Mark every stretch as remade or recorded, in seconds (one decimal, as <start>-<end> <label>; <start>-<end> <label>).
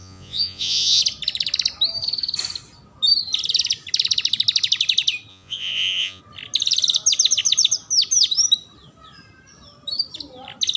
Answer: 0.0-1.0 remade; 1.0-5.3 recorded; 5.3-6.2 remade; 6.2-10.8 recorded